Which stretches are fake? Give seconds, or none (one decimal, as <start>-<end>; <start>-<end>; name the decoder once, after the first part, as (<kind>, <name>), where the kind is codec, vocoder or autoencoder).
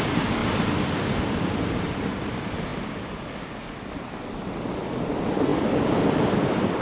0.4-1.7 (vocoder, BigVGAN v2); 2.7-3.2; 5.5-6.8